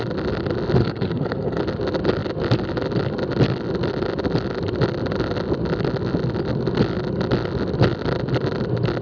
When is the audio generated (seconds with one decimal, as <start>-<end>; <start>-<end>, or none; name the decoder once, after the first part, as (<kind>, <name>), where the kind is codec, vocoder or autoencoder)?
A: 0.8-1.6 (codec, SNAC)